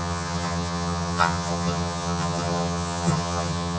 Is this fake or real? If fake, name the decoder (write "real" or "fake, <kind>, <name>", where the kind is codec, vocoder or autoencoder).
fake, vocoder, HiFi-GAN